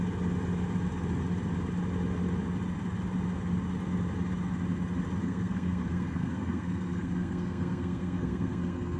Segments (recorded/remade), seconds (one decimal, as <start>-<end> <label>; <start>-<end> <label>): 0.0-5.2 recorded; 5.2-9.0 remade